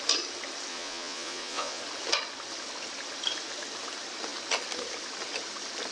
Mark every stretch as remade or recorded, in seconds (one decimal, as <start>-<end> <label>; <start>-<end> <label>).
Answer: 0.0-0.7 recorded; 0.7-1.8 remade; 1.8-5.9 recorded